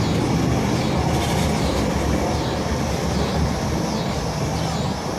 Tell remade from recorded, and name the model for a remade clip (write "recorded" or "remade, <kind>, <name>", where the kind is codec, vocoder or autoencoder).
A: recorded